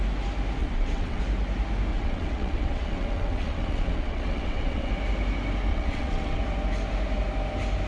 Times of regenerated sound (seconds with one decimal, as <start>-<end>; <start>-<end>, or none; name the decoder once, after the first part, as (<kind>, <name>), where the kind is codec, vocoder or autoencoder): 0.6-1.2 (vocoder, WaveNeXt); 1.9-4.9; 5.7-6.4